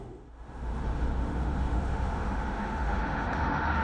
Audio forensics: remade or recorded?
remade